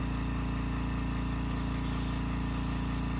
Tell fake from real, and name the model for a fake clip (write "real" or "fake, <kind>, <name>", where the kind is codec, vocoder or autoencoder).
fake, vocoder, BigVGAN v2